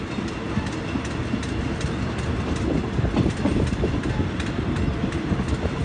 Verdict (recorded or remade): recorded